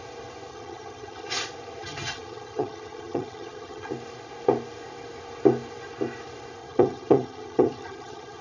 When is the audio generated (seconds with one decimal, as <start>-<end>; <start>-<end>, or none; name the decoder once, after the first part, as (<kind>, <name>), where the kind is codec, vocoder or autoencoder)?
0.5-1.3 (vocoder, HiFi-GAN); 1.8-3.9; 6.6-8.4